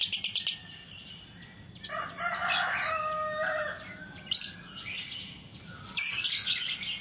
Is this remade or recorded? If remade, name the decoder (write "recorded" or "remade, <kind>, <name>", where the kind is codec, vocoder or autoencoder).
recorded